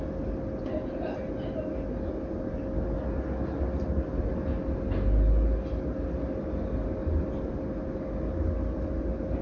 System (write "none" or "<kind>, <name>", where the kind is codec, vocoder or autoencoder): none